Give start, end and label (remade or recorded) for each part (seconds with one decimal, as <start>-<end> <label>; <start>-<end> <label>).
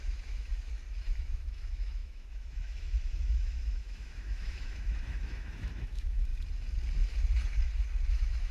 0.0-0.5 remade; 0.5-1.0 recorded; 1.0-6.3 remade; 6.3-8.1 recorded; 8.1-8.5 remade